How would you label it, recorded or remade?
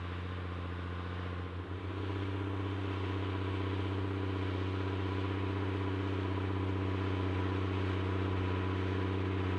recorded